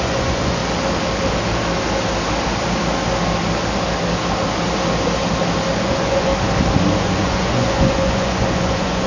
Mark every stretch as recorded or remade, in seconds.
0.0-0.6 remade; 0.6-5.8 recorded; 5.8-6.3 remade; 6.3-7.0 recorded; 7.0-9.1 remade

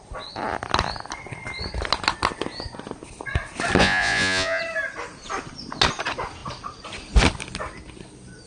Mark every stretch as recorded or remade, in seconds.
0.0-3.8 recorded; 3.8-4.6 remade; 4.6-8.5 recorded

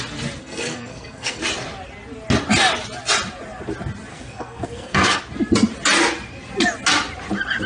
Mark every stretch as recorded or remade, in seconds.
0.0-0.4 recorded; 0.4-1.4 remade; 1.4-4.1 recorded; 4.1-5.2 remade; 5.2-7.7 recorded